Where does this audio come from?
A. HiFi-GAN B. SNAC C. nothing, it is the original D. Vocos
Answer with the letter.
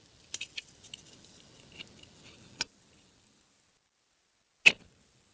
C